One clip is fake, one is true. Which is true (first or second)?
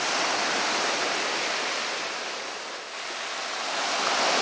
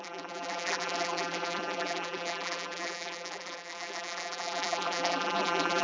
first